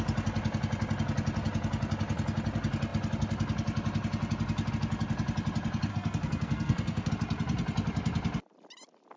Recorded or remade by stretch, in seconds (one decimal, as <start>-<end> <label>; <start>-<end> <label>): 0.0-5.9 recorded; 5.9-7.1 remade; 7.1-9.2 recorded